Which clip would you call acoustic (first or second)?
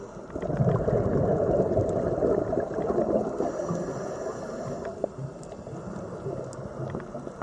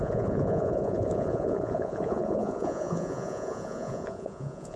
first